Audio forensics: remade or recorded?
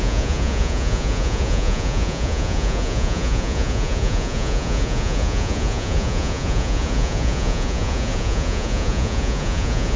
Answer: remade